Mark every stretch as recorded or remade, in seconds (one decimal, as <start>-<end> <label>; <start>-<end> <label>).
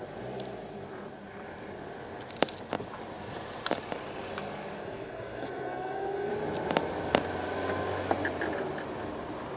0.0-4.8 recorded; 4.8-6.3 remade; 6.3-9.6 recorded